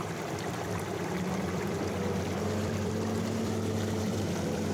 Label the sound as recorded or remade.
remade